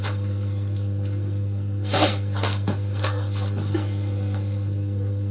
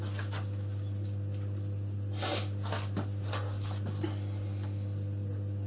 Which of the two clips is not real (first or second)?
first